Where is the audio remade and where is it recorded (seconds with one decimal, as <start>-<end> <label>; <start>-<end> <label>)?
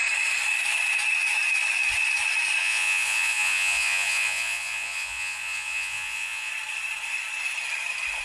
0.0-2.6 recorded; 2.6-6.5 remade; 6.5-8.2 recorded